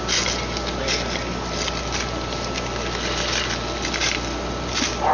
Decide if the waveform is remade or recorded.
recorded